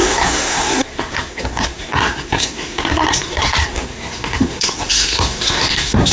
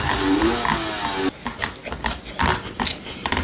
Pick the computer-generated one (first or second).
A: first